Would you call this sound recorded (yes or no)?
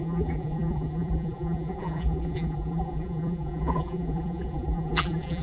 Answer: no